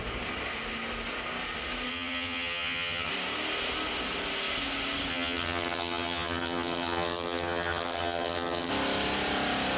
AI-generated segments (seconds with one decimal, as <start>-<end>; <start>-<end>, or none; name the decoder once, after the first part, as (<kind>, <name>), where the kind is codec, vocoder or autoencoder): 1.9-3.1 (vocoder, HiFi-GAN); 5.1-8.7